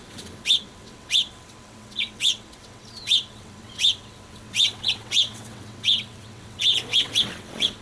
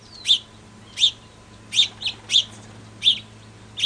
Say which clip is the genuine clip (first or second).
second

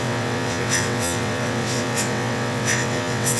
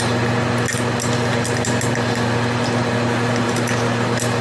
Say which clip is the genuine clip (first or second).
second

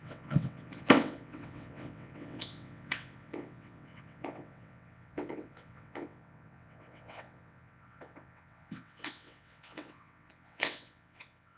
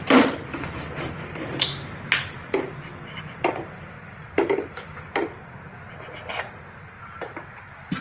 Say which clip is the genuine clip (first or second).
second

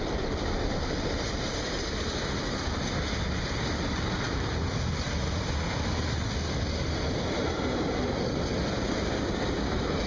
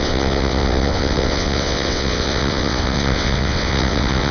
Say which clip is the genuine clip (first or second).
first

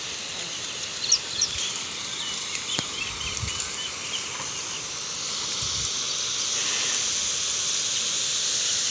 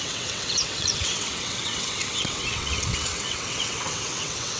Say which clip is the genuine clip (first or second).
first